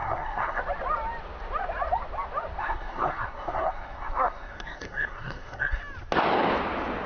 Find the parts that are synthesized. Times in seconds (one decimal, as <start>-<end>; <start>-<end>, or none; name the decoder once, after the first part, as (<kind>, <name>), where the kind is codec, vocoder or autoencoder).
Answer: 0.0-0.6 (codec, SNAC); 2.6-5.8